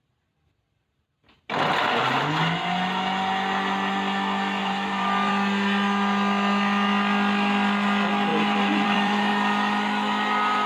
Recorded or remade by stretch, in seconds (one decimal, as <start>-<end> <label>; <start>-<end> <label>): 0.0-4.6 recorded; 4.6-5.3 remade; 5.3-8.3 recorded; 8.3-9.3 remade; 9.3-10.7 recorded